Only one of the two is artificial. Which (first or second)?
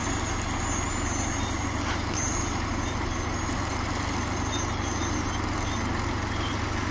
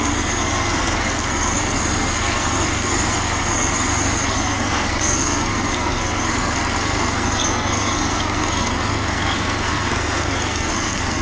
second